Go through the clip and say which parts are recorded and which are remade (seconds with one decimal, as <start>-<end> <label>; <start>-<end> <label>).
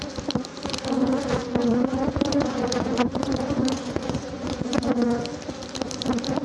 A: 0.0-1.6 recorded; 1.6-5.2 remade; 5.2-6.4 recorded